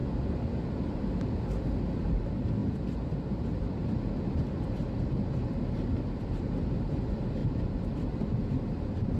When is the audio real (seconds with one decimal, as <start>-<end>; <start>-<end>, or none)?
0.0-2.6; 3.4-7.4; 8.4-9.2